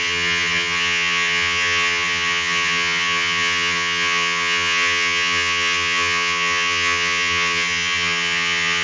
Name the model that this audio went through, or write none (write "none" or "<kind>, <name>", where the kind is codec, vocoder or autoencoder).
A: vocoder, HiFi-GAN